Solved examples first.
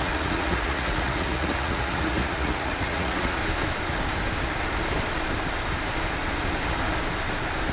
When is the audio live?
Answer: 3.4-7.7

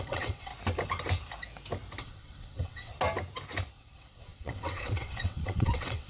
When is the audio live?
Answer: 0.5-2.0; 2.9-3.7

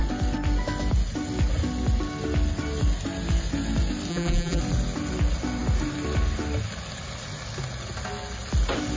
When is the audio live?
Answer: 0.0-4.1; 4.6-9.0

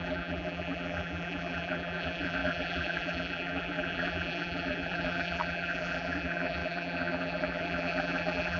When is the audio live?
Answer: none

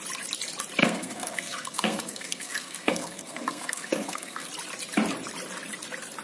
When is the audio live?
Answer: 0.0-0.8; 4.5-6.2

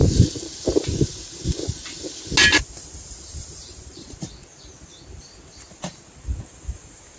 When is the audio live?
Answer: 0.0-7.2

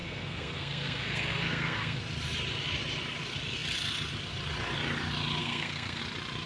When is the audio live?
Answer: 2.0-5.4; 6.0-6.5

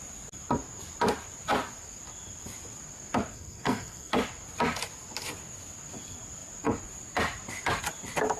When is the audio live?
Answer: 0.0-3.3; 4.1-8.4